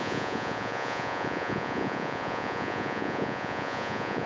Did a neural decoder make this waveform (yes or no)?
yes